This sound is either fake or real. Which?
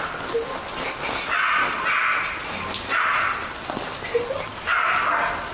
real